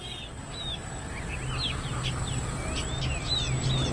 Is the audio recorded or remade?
recorded